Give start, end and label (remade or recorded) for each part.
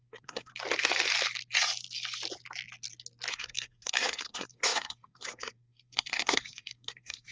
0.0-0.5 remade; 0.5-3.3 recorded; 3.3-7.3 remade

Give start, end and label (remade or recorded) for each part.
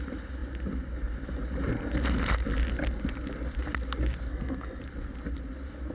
0.0-4.3 recorded; 4.3-4.8 remade; 4.8-5.9 recorded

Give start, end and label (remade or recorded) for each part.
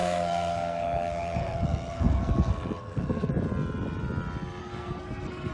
0.0-3.3 remade; 3.3-4.6 recorded; 4.6-5.5 remade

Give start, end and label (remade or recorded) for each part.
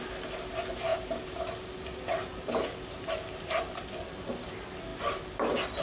0.0-5.8 recorded